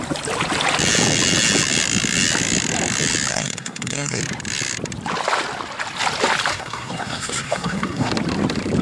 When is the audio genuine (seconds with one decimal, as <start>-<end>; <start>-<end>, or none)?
0.0-3.3; 4.2-6.5; 8.1-8.8